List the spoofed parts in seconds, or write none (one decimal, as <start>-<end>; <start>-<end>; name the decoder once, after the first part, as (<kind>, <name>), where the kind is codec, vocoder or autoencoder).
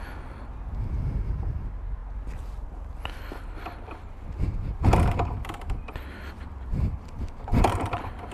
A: none